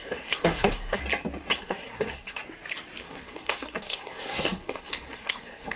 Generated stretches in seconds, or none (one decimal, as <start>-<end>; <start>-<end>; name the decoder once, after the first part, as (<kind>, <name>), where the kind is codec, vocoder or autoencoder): 0.0-1.0 (codec, SNAC); 1.6-2.4; 3.0-5.8